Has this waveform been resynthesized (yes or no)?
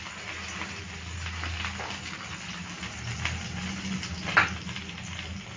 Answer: no